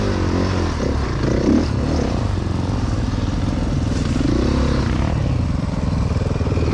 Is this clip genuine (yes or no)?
yes